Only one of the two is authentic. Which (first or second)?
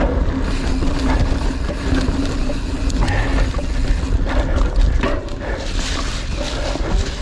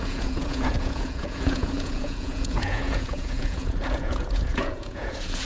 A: first